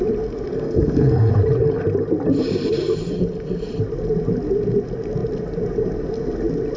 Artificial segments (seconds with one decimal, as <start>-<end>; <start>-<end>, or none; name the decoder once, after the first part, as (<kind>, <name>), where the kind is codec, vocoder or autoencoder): 0.5-1.3 (codec, SNAC)